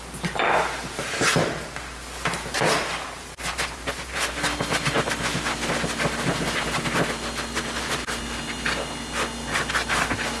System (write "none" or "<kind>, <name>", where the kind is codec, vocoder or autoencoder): none